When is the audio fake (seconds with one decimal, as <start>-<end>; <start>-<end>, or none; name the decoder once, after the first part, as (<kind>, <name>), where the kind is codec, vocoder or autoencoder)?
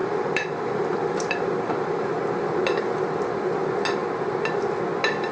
0.0-2.1 (vocoder, BigVGAN v2)